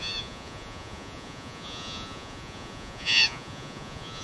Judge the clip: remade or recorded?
remade